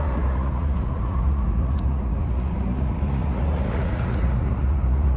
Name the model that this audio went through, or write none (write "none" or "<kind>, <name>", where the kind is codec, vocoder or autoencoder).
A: vocoder, Vocos